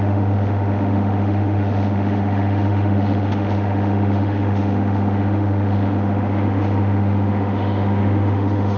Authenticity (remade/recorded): remade